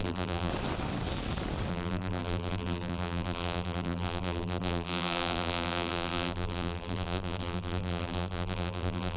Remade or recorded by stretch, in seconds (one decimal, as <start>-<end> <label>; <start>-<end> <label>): 0.0-0.5 remade; 0.5-1.7 recorded; 1.7-9.2 remade